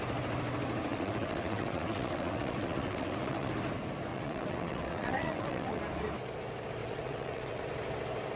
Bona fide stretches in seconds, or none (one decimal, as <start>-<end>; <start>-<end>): 0.0-0.9; 3.5-4.1; 5.8-6.8; 7.6-8.4